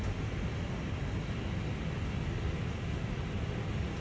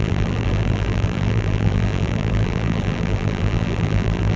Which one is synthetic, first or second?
second